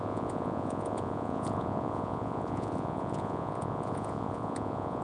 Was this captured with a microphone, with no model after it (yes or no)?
no